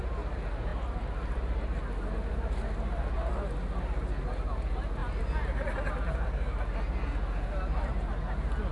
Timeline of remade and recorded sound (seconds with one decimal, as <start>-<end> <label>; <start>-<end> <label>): 0.0-8.7 recorded

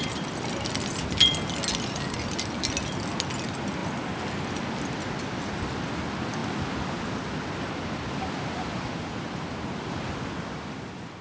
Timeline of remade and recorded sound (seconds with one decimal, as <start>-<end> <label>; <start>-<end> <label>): 0.0-11.2 recorded

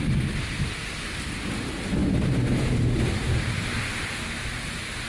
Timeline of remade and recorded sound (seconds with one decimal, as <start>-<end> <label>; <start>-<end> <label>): 0.0-5.1 recorded

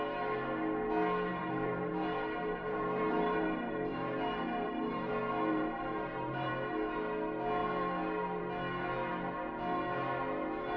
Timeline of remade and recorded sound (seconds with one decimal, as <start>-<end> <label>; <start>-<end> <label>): 0.0-1.3 recorded; 1.3-5.1 remade; 5.1-5.5 recorded; 5.5-6.5 remade; 6.5-10.8 recorded